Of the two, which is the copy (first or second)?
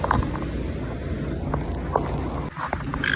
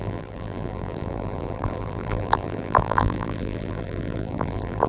second